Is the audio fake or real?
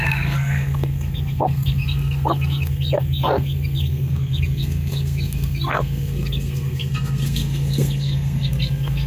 fake